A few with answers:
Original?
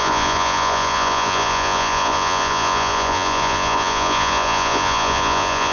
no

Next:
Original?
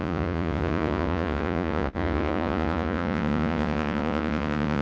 no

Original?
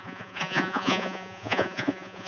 no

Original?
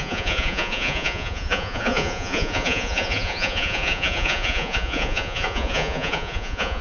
no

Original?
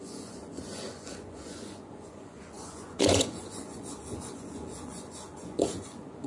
no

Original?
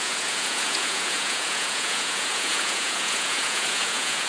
no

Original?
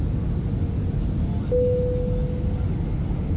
yes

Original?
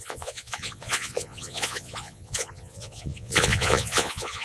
no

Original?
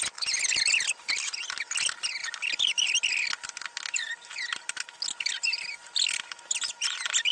yes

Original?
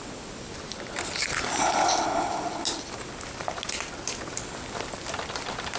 yes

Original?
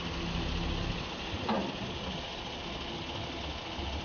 yes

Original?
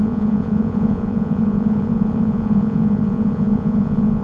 no